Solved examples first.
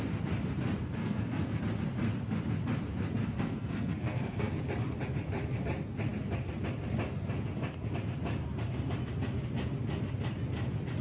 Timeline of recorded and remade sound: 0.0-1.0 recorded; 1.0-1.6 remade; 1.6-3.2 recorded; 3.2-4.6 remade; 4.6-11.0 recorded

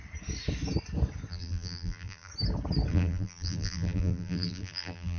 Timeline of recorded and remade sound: 0.0-1.3 recorded; 1.3-2.3 remade; 2.3-2.9 recorded; 2.9-5.2 remade

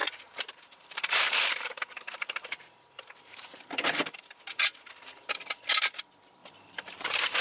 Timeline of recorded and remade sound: 0.0-4.4 remade; 4.4-6.4 recorded; 6.4-7.4 remade

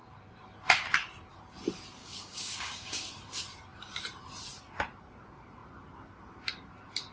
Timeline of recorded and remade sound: 0.0-2.0 recorded; 2.0-3.1 remade; 3.1-7.1 recorded

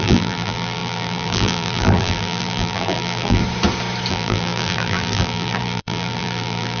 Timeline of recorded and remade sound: 0.0-3.4 remade; 3.4-4.1 recorded; 4.1-6.8 remade

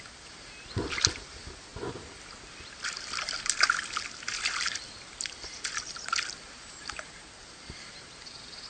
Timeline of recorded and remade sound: 0.0-8.7 recorded

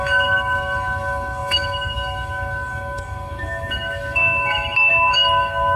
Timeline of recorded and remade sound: 0.0-5.8 remade